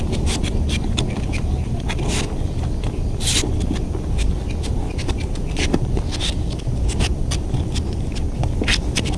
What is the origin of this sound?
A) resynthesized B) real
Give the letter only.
B